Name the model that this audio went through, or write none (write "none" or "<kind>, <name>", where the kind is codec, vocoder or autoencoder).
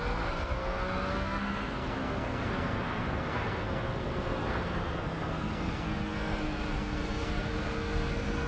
codec, SNAC